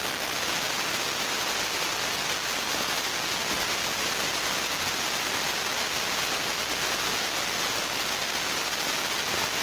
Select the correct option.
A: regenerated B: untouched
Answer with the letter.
B